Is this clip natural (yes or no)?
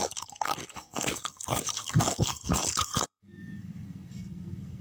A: no